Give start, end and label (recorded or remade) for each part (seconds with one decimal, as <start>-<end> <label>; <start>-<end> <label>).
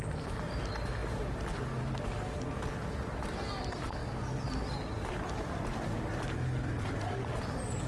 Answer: 0.0-7.9 recorded